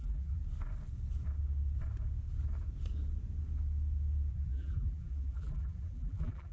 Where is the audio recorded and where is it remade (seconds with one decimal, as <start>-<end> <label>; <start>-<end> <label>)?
0.0-0.4 remade; 0.4-4.3 recorded; 4.3-6.5 remade